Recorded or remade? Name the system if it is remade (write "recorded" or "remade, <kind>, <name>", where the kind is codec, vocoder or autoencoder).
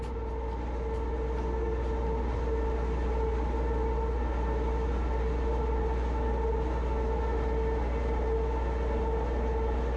recorded